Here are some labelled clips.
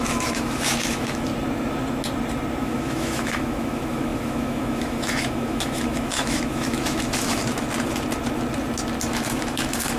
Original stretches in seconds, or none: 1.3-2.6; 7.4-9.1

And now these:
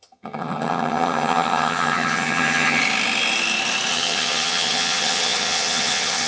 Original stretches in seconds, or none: 2.8-3.9